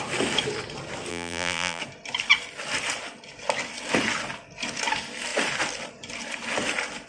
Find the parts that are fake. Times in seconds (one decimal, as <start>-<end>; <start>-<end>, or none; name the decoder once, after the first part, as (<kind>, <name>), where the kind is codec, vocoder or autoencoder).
1.1-1.8 (vocoder, BigVGAN v2)